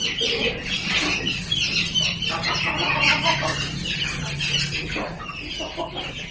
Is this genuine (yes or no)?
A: yes